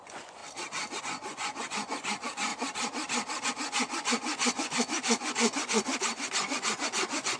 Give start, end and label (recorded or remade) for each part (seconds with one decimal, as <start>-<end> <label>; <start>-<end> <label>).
0.0-0.4 remade; 0.4-1.0 recorded; 1.0-2.5 remade; 2.5-3.5 recorded; 3.5-5.9 remade; 5.9-6.4 recorded; 6.4-7.4 remade